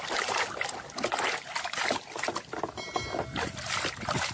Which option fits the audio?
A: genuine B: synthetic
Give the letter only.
A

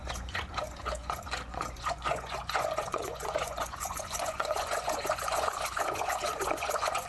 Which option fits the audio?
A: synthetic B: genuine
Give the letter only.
A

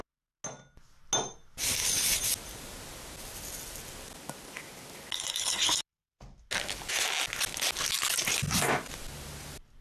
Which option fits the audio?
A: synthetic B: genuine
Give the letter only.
B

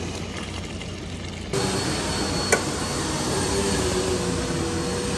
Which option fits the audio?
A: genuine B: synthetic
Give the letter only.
A